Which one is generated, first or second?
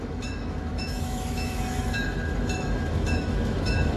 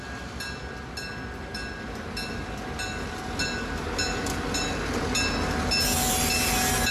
first